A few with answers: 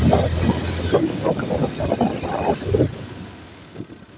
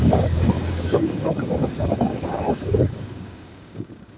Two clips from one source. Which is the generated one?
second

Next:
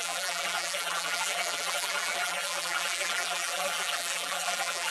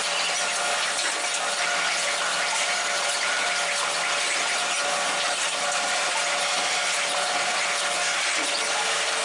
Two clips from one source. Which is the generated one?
first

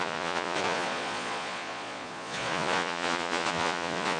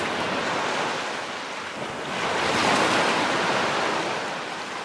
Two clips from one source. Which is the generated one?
first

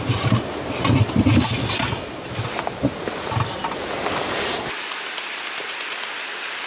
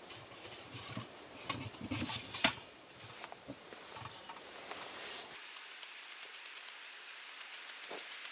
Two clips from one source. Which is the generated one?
second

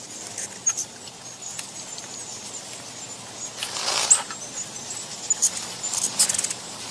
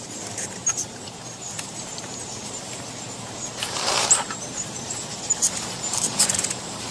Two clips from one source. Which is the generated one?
second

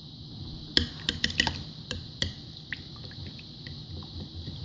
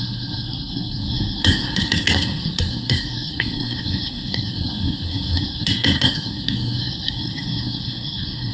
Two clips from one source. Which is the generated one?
second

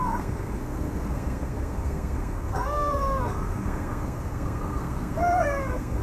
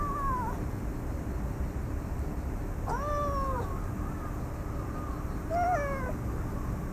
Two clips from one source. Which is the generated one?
first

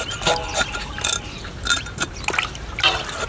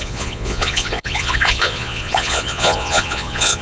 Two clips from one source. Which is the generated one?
second